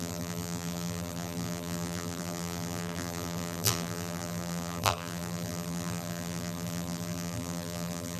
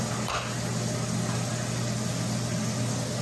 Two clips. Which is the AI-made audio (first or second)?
first